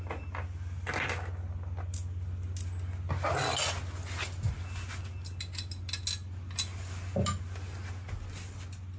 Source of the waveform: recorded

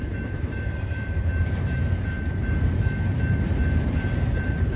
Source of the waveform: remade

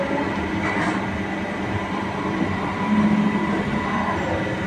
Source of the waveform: recorded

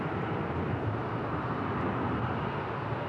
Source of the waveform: recorded